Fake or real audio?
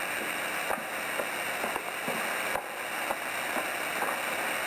fake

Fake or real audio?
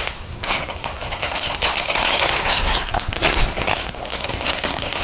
fake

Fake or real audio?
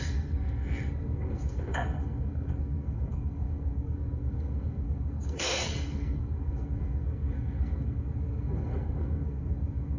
fake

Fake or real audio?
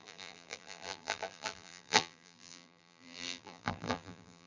fake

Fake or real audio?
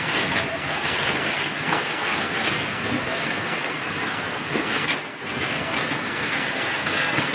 fake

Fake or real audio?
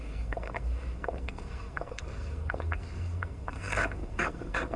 fake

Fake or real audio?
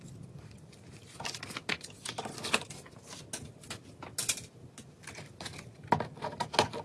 real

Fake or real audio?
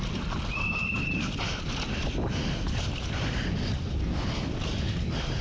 real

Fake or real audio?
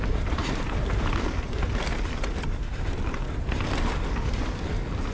real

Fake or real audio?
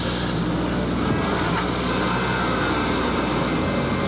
real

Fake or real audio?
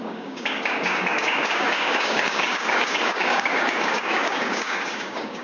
fake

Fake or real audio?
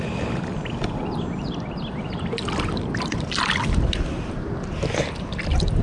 real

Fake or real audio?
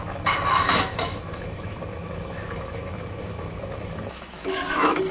fake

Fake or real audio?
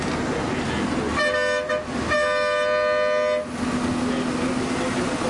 real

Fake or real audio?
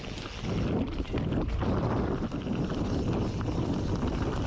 real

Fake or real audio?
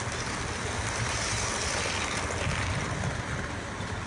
real